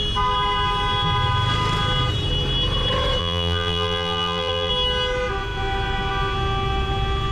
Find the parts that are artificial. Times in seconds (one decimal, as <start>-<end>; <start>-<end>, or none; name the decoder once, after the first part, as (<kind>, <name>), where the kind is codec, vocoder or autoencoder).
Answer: 3.2-4.7 (vocoder, BigVGAN v2)